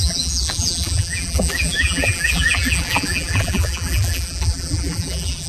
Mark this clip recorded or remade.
remade